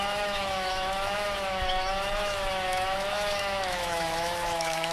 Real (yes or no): no